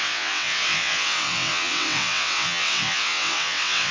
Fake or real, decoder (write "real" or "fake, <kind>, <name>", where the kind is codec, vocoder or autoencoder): fake, vocoder, WaveNeXt